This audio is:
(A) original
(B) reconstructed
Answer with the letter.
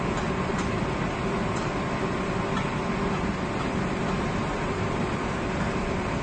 A